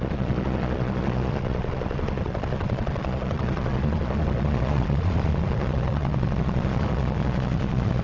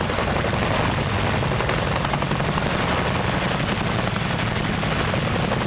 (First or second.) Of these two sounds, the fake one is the first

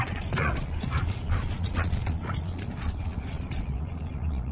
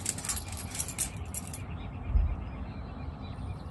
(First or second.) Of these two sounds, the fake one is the first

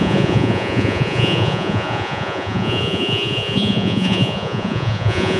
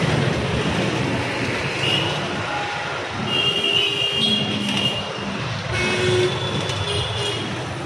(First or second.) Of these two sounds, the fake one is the first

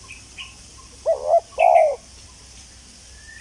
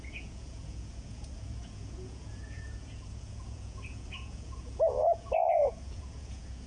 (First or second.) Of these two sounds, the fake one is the second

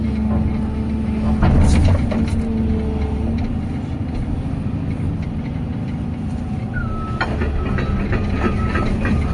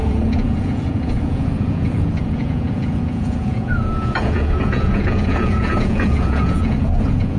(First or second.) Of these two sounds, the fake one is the second